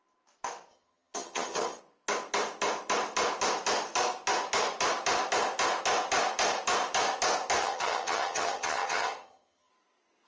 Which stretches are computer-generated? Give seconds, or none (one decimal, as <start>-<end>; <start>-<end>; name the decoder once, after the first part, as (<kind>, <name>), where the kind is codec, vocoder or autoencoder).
0.7-1.8 (vocoder, HiFi-GAN); 7.6-9.7